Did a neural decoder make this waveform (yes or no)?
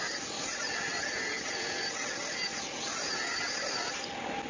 no